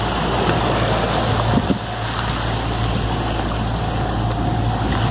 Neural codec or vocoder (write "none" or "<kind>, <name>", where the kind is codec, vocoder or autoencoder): none